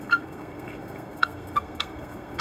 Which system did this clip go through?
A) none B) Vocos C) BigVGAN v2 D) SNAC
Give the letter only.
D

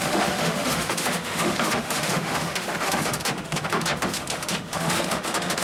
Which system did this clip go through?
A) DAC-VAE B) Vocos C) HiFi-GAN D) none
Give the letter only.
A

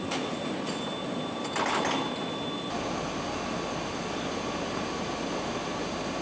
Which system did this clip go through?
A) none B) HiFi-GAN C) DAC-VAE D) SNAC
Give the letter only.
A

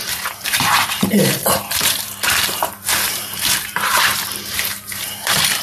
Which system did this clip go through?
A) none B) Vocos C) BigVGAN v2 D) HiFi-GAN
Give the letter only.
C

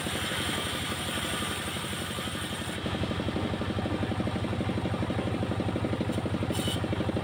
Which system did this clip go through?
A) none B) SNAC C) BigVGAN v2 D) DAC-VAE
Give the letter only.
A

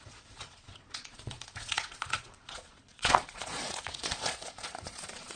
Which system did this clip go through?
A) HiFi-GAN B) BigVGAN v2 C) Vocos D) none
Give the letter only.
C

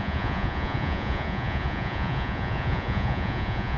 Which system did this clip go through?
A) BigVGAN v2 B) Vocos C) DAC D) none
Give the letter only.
B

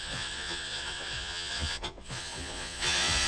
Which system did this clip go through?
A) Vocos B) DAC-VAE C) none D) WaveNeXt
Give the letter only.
A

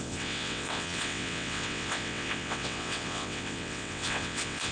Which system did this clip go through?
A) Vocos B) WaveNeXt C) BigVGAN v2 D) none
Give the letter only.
B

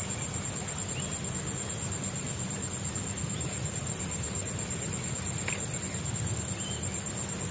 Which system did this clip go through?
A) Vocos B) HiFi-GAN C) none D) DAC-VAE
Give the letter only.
C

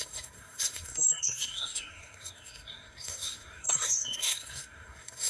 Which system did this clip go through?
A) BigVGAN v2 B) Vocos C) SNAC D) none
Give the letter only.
C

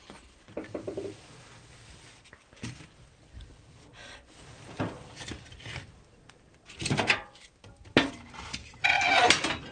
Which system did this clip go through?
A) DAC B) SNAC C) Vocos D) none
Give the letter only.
D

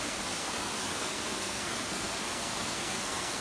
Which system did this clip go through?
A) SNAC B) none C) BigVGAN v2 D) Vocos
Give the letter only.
A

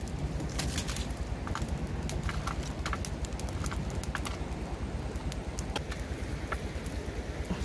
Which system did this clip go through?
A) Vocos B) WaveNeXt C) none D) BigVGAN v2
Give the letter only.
C